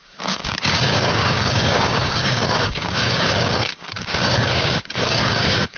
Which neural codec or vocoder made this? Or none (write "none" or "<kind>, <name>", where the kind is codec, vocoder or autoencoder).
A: codec, DAC